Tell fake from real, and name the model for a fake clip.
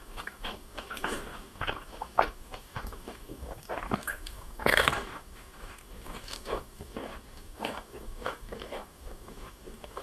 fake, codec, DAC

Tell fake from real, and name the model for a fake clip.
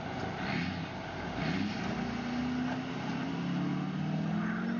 real